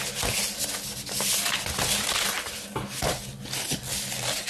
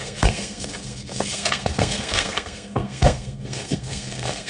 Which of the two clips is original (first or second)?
first